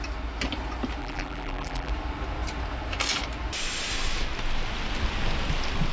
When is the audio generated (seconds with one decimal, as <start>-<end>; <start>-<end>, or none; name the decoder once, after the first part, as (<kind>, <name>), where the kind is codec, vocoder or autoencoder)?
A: 1.0-1.9 (vocoder, BigVGAN v2)